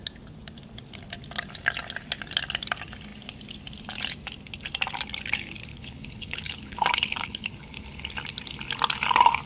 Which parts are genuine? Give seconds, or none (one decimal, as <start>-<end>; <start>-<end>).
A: 0.0-5.7; 7.5-9.5